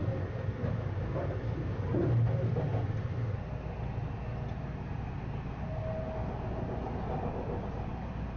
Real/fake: real